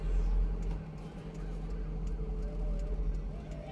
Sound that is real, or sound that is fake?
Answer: real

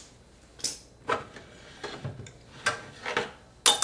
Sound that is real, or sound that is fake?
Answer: real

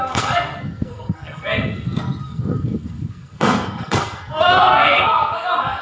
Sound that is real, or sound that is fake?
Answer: fake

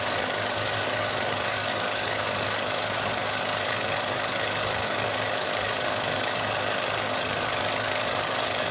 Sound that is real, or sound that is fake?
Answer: fake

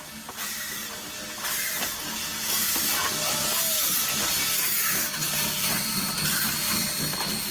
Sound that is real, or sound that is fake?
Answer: real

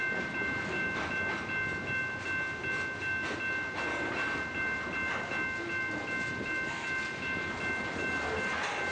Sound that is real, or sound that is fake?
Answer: real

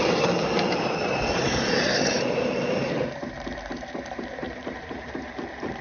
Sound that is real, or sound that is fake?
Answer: fake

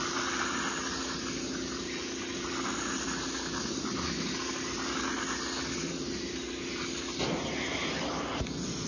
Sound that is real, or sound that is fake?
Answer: real